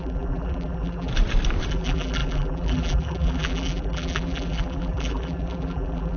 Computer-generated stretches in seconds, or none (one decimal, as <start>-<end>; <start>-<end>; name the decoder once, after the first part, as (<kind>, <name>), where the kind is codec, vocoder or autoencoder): 0.0-1.1 (vocoder, BigVGAN v2); 1.7-6.2